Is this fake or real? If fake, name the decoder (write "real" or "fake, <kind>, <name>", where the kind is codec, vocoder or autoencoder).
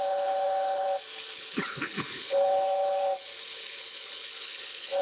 fake, codec, HILCodec